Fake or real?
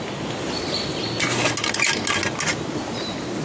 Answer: real